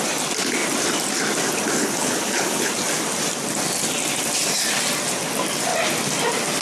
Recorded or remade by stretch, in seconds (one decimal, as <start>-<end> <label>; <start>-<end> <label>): 0.0-1.8 recorded; 1.8-2.7 remade; 2.7-6.6 recorded